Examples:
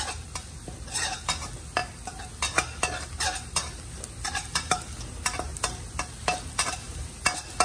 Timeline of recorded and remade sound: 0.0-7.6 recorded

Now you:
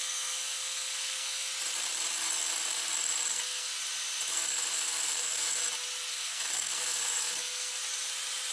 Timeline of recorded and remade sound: 0.0-1.5 remade; 1.5-3.3 recorded; 3.3-3.7 remade; 3.7-4.3 recorded; 4.3-5.6 remade; 5.6-6.1 recorded; 6.1-7.8 remade; 7.8-8.5 recorded

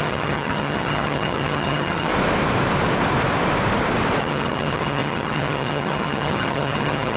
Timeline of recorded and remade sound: 0.0-2.1 remade; 2.1-4.2 recorded; 4.2-7.2 remade